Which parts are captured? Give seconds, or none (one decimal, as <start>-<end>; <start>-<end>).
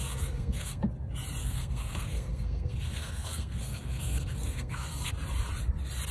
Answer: 0.8-1.4; 5.1-6.1